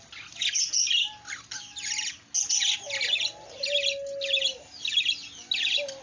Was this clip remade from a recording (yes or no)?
no